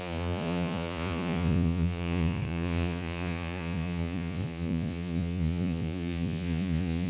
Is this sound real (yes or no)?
no